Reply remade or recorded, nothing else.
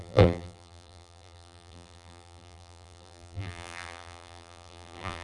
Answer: remade